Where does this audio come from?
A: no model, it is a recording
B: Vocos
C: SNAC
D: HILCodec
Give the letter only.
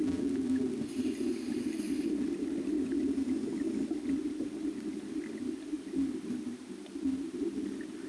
A